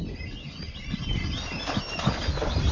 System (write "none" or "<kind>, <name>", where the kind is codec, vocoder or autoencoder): none